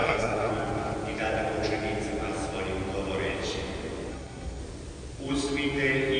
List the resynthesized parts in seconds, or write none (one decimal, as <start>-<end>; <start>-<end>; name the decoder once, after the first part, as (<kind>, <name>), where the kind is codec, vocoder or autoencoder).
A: 0.0-0.5 (codec, SNAC); 4.1-4.6